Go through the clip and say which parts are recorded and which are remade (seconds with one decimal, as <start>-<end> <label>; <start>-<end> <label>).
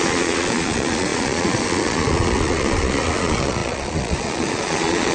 0.0-5.1 remade